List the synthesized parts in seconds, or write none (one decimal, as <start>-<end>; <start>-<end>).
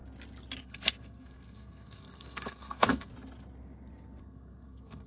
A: 0.6-3.1; 4.2-5.1